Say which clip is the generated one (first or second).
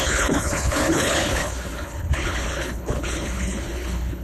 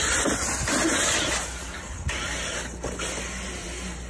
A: first